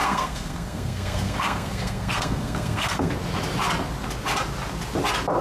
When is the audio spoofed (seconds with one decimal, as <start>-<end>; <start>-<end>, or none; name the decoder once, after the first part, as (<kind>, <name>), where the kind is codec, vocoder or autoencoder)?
0.0-3.1 (codec, SNAC)